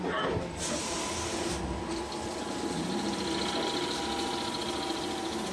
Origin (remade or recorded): recorded